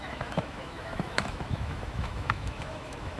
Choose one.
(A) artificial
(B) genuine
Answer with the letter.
A